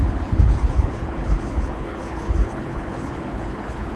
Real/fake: fake